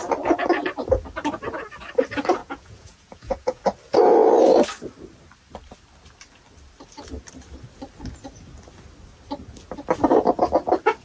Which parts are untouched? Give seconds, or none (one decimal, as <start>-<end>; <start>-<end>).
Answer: 0.0-2.4; 3.6-11.0